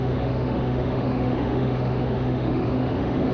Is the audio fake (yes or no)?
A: yes